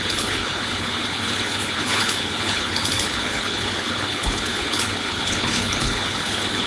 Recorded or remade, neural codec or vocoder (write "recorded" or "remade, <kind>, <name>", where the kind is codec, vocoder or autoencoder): remade, codec, HILCodec